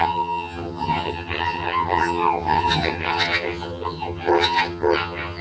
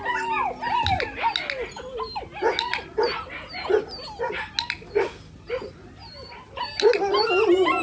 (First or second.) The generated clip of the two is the first